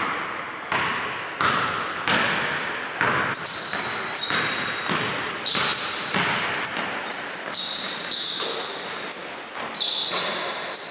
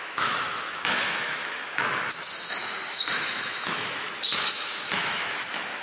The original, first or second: first